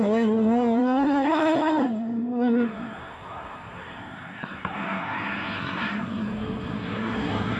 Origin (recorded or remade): remade